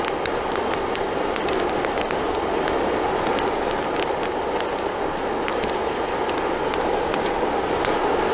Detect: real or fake real